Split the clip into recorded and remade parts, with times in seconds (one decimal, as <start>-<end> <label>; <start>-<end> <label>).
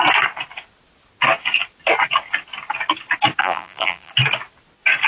0.0-3.4 recorded; 3.4-4.1 remade; 4.1-5.1 recorded